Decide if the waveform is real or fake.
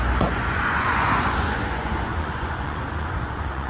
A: fake